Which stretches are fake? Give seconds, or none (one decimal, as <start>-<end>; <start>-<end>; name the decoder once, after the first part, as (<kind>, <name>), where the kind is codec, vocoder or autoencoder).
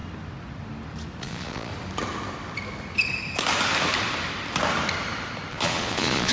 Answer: 1.2-1.7 (vocoder, Vocos); 5.5-6.3